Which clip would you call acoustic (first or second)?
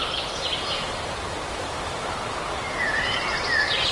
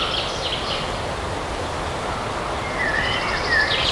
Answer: second